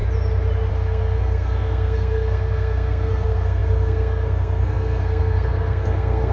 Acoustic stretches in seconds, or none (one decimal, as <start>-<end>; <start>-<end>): 0.0-0.7